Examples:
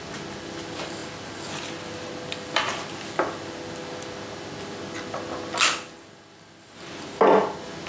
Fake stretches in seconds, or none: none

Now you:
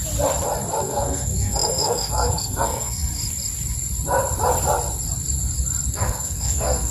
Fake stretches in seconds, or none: 0.8-3.1 (codec, SNAC); 5.9-6.9

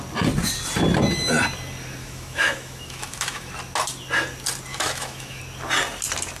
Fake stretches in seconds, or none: 2.0-3.5 (autoencoder, DAC-VAE); 4.7-5.4

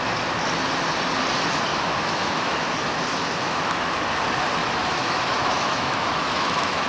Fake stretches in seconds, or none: 1.7-2.7 (autoencoder, DAC-VAE); 3.2-4.0; 4.6-6.9